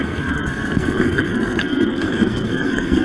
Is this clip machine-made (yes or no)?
yes